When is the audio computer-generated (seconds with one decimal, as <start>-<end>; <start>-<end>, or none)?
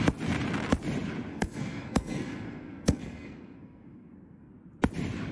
1.3-4.5